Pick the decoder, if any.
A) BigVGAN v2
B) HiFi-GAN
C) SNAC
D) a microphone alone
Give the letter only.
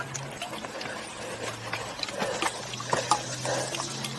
D